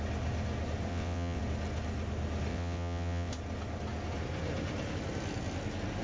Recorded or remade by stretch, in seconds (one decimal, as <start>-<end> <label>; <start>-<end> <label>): 0.0-0.9 recorded; 0.9-1.4 remade; 1.4-2.5 recorded; 2.5-3.3 remade; 3.3-6.0 recorded